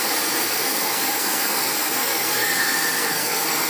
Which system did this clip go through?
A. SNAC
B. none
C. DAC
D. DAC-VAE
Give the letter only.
A